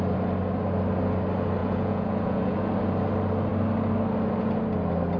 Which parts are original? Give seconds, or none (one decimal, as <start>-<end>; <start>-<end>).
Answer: 0.0-1.6; 2.6-5.2